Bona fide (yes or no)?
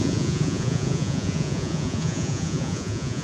no